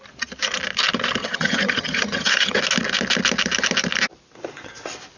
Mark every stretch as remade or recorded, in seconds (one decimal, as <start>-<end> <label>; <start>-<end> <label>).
0.0-1.2 recorded; 1.2-2.6 remade; 2.6-5.2 recorded